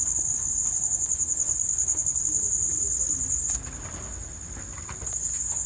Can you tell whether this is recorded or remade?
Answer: recorded